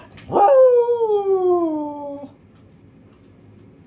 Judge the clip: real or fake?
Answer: real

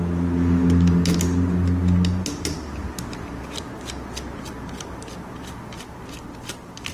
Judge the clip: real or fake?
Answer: real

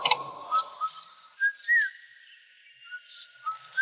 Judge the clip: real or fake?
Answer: real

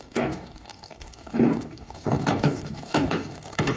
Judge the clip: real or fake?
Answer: fake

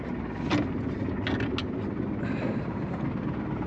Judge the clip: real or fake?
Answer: real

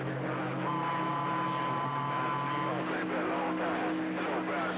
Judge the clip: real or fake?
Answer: real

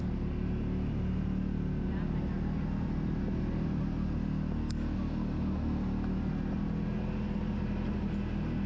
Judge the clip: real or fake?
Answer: real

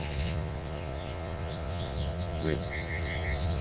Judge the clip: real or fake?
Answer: fake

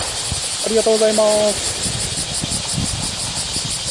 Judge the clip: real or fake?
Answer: real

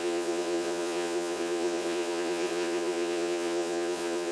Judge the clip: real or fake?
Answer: fake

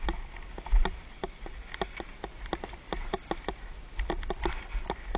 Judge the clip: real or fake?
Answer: real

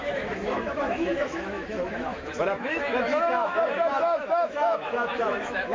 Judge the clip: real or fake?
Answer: fake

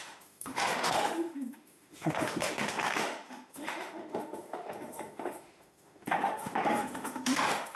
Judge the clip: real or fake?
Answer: fake